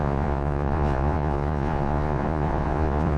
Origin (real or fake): fake